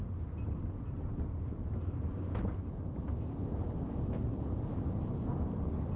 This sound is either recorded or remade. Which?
recorded